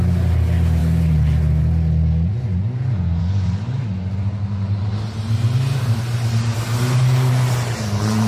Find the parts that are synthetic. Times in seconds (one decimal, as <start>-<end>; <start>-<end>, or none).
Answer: none